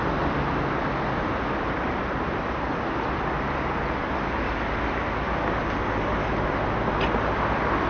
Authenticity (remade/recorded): recorded